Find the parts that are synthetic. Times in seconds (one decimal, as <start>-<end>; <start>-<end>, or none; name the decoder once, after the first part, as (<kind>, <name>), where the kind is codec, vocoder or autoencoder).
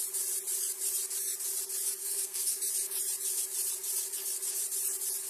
2.0-2.6 (codec, SNAC)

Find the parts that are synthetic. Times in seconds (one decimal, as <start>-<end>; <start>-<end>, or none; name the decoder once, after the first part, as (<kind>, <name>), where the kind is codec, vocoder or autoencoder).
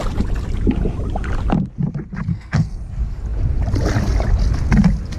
2.3-2.8 (codec, SNAC)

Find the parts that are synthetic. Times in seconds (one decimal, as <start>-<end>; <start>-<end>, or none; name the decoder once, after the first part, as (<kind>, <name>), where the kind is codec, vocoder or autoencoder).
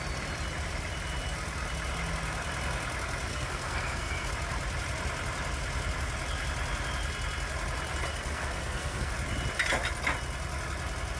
3.3-4.3 (codec, SNAC); 8.1-9.1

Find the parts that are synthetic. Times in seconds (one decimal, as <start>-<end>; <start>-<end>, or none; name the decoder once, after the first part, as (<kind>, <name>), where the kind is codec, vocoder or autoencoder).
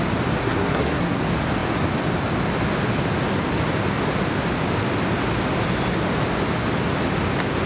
0.4-1.2 (codec, SNAC)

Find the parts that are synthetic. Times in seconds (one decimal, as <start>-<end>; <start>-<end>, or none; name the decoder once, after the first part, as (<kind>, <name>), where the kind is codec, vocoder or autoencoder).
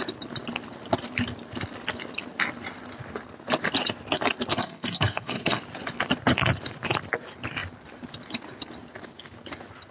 4.5-5.6 (codec, SNAC)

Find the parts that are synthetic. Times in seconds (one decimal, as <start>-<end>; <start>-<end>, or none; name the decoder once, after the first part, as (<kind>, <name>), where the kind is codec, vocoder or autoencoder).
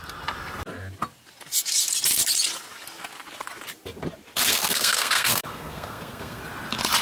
4.5-6.4 (codec, SNAC)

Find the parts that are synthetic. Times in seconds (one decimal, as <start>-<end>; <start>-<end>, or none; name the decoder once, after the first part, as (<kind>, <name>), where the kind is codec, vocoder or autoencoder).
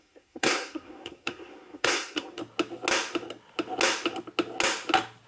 0.0-2.4 (codec, SNAC)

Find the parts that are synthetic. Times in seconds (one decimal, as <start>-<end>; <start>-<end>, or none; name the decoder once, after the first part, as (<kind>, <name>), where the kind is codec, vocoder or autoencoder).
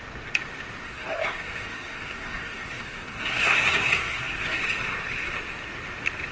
0.8-4.6 (codec, SNAC)